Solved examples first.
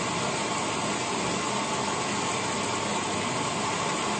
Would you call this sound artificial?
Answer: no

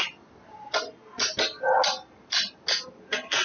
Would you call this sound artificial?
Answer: no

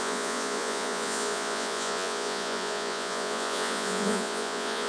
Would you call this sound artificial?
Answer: yes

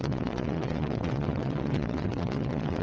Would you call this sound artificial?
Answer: yes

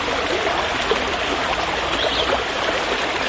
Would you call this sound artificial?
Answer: no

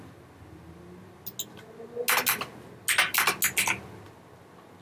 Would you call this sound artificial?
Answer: no